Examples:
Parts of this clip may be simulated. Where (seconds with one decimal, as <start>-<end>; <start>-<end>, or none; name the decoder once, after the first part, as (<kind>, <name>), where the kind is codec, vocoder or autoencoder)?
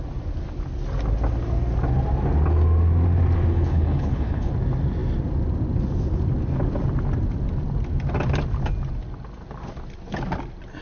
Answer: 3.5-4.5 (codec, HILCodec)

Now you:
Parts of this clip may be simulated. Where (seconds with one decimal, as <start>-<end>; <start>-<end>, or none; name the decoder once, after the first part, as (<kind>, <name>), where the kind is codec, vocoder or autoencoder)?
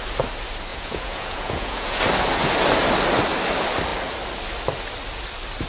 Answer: 0.7-2.0 (vocoder, Vocos)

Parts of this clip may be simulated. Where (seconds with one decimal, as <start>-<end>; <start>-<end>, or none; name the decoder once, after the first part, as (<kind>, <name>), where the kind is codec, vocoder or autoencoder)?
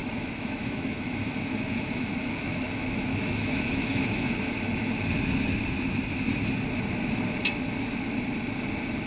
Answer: 0.0-4.3 (autoencoder, DAC-VAE)